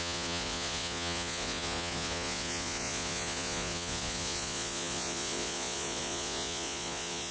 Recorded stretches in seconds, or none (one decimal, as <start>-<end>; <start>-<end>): none